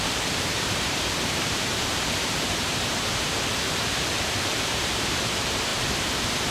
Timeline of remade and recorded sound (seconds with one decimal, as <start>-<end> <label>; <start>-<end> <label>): 0.0-5.7 remade; 5.7-6.5 recorded